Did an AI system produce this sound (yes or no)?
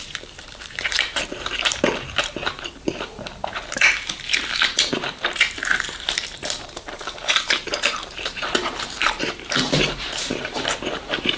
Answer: yes